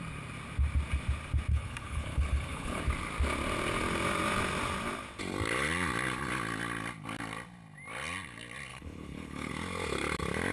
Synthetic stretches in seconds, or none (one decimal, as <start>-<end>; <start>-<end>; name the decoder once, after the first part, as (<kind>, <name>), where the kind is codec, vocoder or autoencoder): 1.5-2.8 (codec, HILCodec); 8.7-9.5

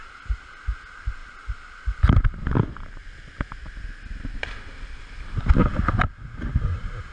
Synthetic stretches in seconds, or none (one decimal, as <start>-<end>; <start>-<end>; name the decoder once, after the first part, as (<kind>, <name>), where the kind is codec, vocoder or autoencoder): none